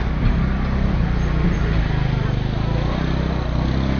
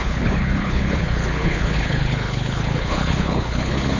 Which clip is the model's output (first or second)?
second